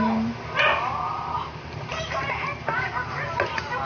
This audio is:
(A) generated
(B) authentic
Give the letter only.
B